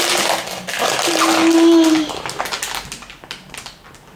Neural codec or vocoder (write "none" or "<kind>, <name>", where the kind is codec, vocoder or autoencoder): none